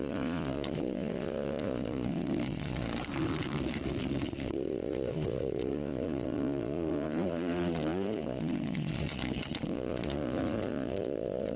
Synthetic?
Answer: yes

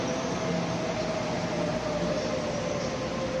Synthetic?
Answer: no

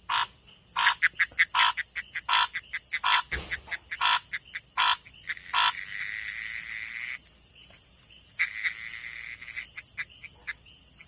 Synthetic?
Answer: no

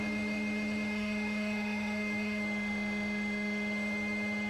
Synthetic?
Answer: yes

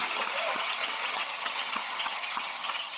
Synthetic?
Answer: yes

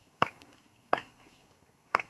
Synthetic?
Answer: yes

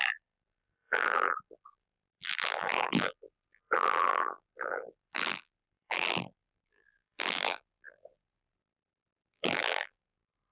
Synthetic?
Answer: yes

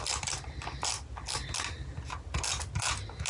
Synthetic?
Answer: no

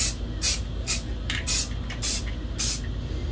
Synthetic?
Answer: no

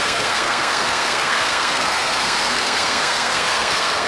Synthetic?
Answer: yes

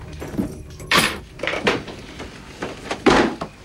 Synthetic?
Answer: yes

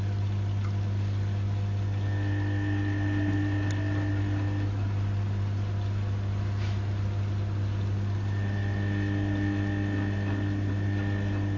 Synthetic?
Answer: no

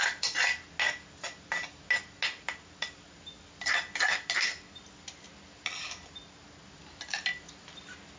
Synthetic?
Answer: no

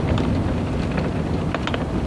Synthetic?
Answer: no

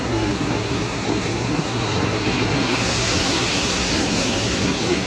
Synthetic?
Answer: yes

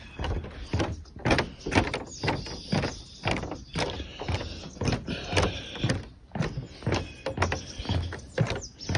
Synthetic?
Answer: no